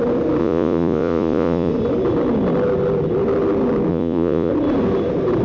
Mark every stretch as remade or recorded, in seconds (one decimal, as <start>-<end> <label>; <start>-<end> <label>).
0.0-0.4 recorded; 0.4-1.7 remade; 1.7-3.9 recorded; 3.9-4.5 remade; 4.5-5.4 recorded

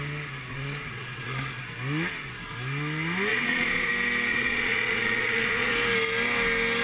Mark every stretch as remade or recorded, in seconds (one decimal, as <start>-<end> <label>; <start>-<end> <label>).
0.0-0.5 recorded; 0.5-1.6 remade; 1.6-3.3 recorded; 3.3-3.9 remade; 3.9-4.3 recorded; 4.3-5.7 remade; 5.7-6.8 recorded

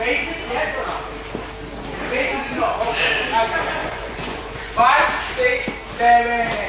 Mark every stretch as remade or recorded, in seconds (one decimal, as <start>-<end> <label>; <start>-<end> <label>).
0.0-2.3 recorded; 2.3-2.8 remade; 2.8-3.8 recorded; 3.8-4.9 remade; 4.9-6.7 recorded

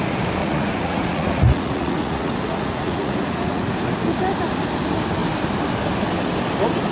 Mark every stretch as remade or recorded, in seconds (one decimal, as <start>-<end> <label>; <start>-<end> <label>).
0.0-0.4 recorded; 0.4-3.7 remade; 3.7-6.9 recorded

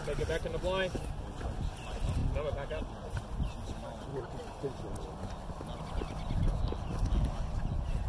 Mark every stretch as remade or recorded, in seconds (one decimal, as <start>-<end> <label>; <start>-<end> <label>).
0.0-8.1 recorded

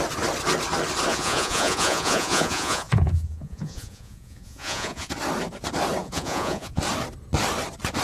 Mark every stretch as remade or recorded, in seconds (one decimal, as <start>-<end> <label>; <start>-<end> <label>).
0.0-1.1 recorded; 1.1-5.1 remade; 5.1-6.0 recorded; 6.0-6.8 remade; 6.8-8.0 recorded

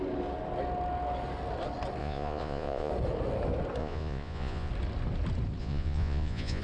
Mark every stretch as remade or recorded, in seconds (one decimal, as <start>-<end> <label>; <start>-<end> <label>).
0.0-2.0 recorded; 2.0-2.9 remade; 2.9-3.8 recorded; 3.8-4.7 remade; 4.7-5.6 recorded; 5.6-6.6 remade

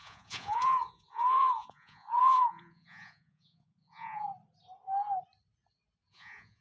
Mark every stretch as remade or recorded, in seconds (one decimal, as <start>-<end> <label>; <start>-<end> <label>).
0.0-4.3 remade; 4.3-6.1 recorded; 6.1-6.6 remade